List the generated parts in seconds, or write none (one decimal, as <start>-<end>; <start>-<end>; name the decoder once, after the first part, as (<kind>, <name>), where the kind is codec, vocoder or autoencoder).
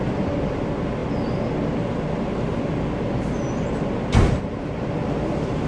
none